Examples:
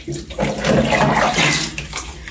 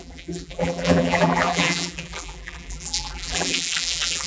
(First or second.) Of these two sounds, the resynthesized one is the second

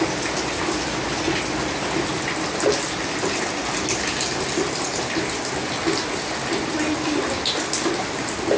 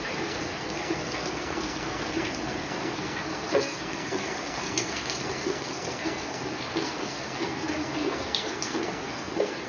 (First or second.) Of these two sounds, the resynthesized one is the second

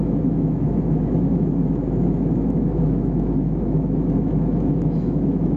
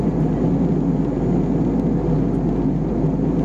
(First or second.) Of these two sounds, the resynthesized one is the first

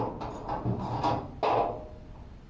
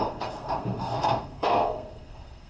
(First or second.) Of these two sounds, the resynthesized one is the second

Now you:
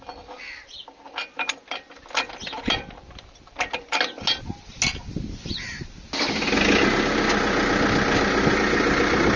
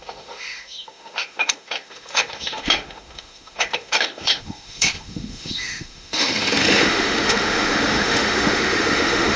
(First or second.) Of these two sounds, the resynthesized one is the second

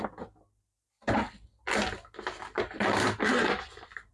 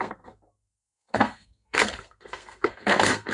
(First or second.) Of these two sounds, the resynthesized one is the second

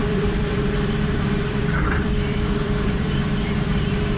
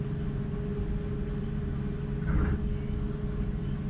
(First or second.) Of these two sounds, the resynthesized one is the first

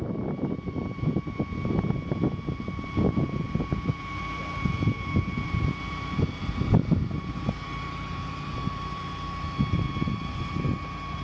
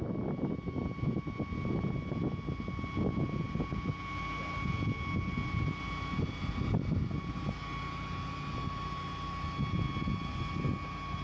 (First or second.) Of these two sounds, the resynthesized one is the first